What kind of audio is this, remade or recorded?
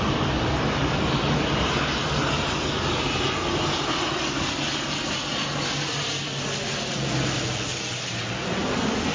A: recorded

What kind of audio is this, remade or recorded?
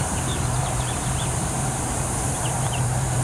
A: remade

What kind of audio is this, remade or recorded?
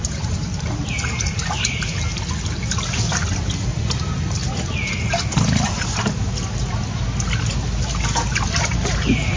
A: recorded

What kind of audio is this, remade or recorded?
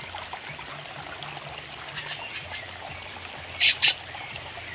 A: recorded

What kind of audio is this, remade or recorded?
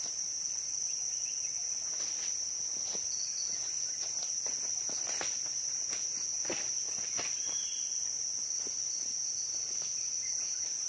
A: recorded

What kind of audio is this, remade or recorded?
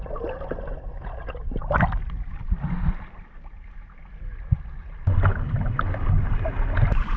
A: recorded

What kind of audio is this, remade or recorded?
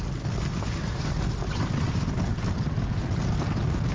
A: recorded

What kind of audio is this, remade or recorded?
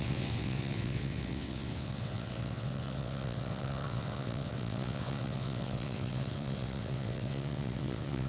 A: remade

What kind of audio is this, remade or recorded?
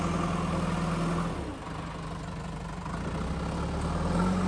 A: recorded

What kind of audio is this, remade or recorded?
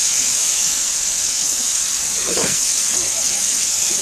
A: remade